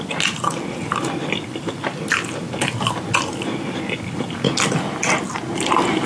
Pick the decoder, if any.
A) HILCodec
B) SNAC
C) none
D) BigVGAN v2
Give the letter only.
C